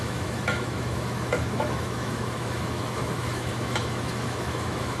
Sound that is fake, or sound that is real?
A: fake